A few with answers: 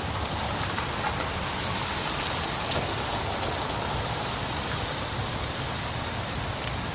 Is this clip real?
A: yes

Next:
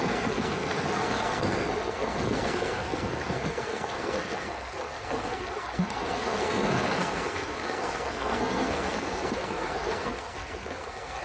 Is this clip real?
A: no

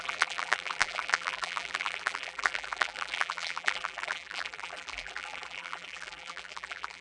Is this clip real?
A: no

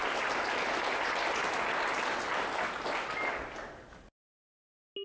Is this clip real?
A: yes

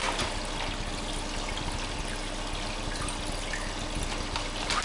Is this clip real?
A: yes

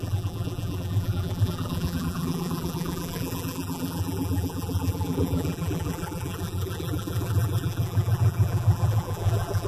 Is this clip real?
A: no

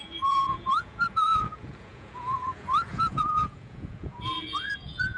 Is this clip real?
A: no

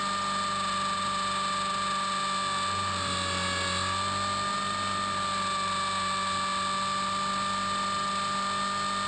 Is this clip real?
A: yes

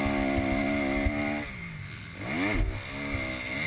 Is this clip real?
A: yes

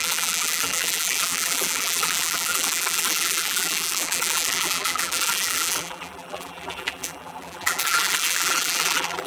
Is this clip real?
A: no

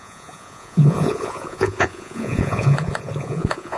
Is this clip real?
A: no